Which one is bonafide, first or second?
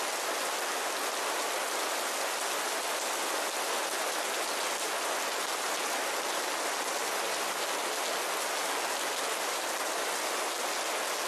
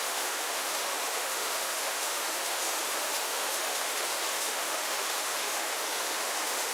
first